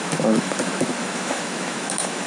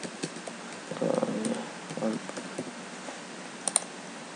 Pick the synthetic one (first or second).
first